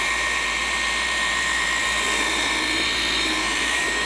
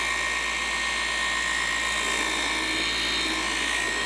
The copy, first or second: first